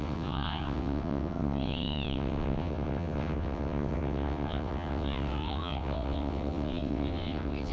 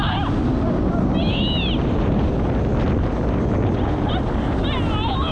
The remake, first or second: first